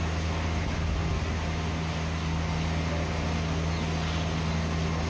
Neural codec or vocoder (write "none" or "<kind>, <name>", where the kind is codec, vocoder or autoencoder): none